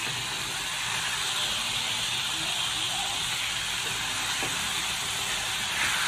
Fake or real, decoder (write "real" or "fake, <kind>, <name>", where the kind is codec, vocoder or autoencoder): real